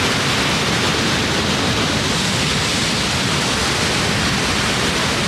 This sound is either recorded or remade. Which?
recorded